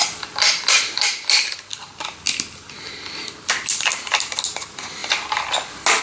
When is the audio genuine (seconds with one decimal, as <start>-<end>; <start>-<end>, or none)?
0.0-6.0